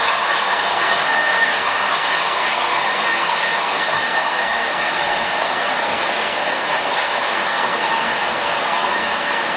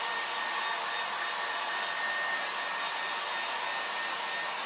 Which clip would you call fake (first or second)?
first